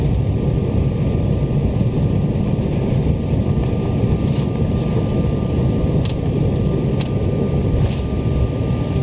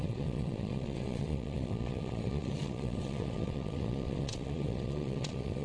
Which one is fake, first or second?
second